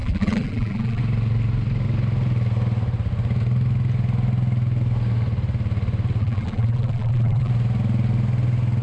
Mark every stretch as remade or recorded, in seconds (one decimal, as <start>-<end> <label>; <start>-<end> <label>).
0.0-1.0 remade; 1.0-6.2 recorded; 6.2-7.5 remade; 7.5-8.8 recorded